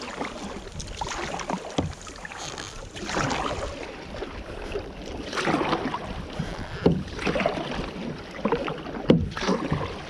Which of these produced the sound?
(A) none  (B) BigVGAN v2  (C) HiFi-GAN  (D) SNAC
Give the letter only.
A